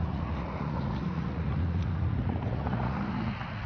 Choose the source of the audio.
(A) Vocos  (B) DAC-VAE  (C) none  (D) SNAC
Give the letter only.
A